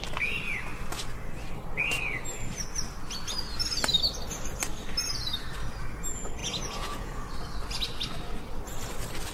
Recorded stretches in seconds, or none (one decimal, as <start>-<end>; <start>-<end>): 0.0-6.4; 7.2-9.3